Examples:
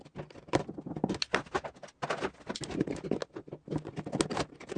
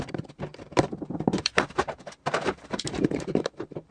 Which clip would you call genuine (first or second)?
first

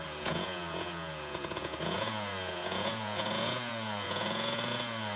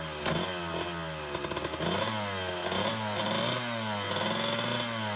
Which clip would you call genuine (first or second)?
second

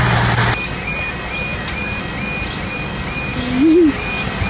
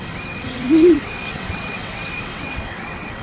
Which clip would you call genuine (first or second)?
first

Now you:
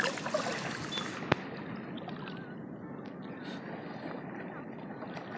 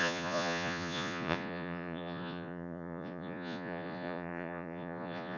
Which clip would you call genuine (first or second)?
first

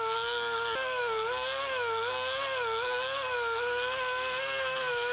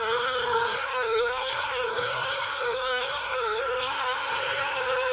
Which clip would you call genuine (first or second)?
first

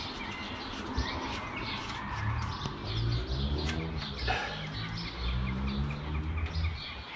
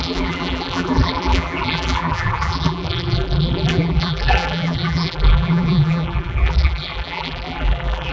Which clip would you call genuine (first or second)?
first